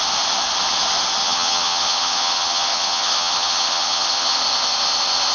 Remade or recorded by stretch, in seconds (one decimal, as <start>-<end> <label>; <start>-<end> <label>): 0.0-1.2 recorded; 1.2-4.4 remade; 4.4-5.3 recorded